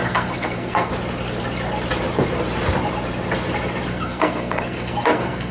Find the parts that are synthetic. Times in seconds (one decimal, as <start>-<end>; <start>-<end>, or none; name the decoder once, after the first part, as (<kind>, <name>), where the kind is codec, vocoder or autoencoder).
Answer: 0.0-0.9 (codec, SNAC); 3.9-5.5